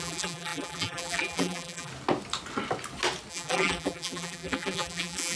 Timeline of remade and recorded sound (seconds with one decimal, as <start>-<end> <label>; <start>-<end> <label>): 0.0-1.9 remade; 1.9-3.3 recorded; 3.3-5.4 remade